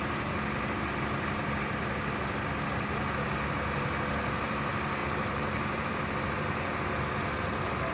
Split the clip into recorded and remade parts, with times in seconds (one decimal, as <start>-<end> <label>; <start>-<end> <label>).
0.0-5.0 recorded; 5.0-6.1 remade; 6.1-7.9 recorded